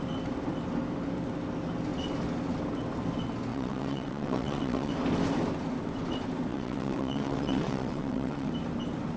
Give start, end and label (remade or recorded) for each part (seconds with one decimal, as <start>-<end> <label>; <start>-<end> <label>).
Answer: 0.0-3.5 recorded; 3.5-4.9 remade; 4.9-6.5 recorded; 6.5-8.5 remade; 8.5-9.2 recorded